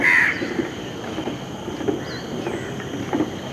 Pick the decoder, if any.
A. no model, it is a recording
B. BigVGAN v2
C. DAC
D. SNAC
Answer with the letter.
A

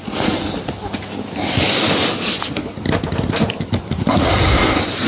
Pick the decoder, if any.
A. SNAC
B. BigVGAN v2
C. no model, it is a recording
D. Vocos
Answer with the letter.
C